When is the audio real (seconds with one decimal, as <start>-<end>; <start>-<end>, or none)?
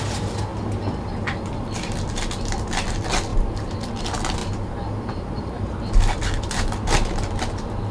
0.0-3.3; 3.9-4.4; 5.9-7.9